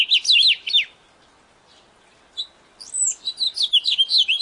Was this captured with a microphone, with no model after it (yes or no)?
yes